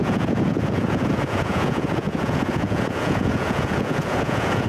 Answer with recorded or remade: remade